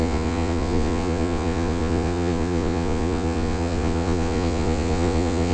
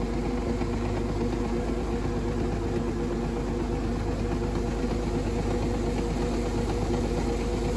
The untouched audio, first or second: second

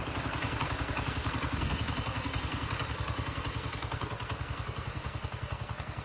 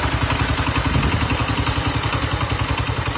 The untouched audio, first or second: second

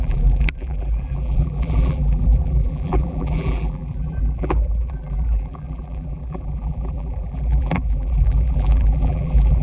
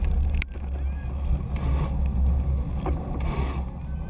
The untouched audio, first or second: second